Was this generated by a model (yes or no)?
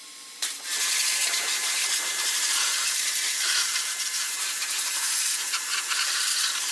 yes